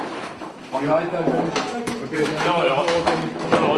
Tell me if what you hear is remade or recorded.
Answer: remade